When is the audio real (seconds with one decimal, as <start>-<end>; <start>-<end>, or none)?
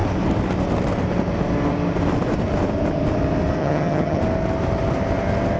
0.0-3.6; 4.2-5.6